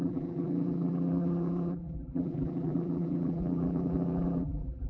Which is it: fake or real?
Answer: fake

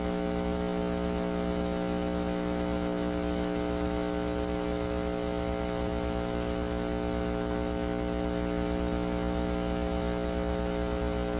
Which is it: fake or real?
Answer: real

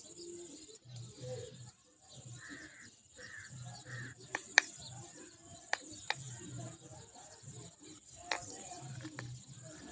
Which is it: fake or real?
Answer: fake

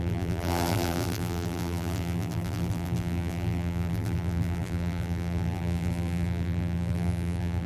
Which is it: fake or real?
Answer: fake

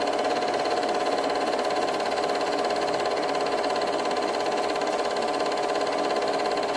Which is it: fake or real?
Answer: real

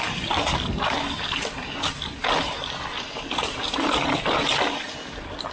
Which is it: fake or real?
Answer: real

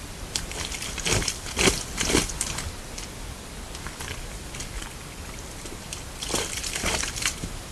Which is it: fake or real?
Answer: fake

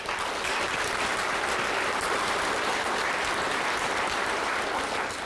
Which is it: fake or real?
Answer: fake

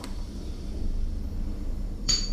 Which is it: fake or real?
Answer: fake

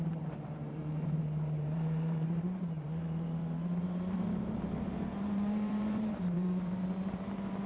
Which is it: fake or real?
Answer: fake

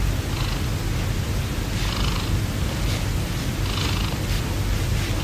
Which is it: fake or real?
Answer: real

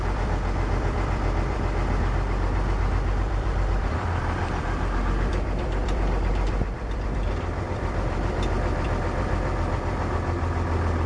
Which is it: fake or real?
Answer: fake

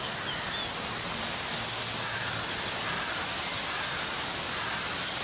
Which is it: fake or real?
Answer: real